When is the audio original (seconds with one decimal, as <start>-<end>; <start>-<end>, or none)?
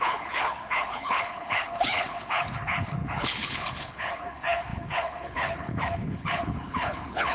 none